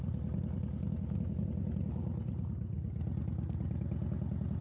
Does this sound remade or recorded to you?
recorded